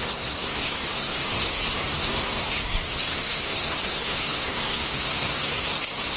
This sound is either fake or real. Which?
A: fake